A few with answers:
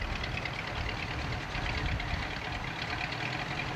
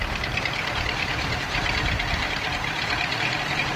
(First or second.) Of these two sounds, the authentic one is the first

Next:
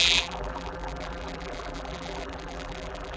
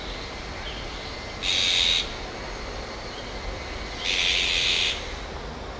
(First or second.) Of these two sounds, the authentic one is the second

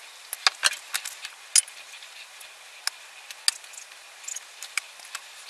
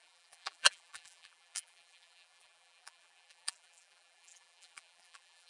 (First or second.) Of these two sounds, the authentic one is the first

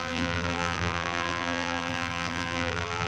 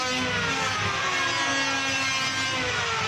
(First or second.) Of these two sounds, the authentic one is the second